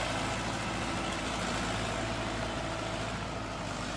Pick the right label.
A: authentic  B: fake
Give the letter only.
A